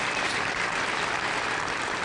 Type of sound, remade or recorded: recorded